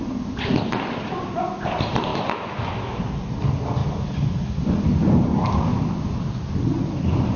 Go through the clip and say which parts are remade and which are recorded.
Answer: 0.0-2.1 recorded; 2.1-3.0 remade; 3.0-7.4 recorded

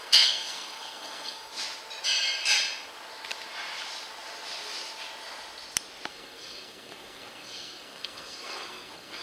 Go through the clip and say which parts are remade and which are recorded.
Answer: 0.0-1.5 remade; 1.5-6.1 recorded; 6.1-9.2 remade